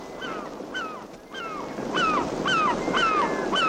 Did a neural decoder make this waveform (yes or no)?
no